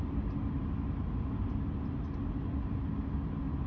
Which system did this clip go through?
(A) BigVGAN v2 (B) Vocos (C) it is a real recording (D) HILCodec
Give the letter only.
C